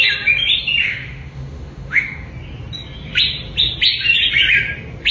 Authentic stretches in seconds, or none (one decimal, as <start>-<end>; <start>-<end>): 0.0-0.8; 2.3-5.1